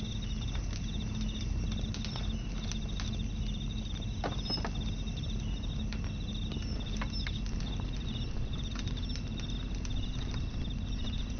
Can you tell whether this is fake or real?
real